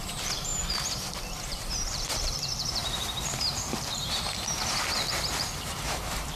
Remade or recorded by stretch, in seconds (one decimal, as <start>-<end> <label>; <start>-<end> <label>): 0.0-0.5 remade; 0.5-1.5 recorded; 1.5-6.4 remade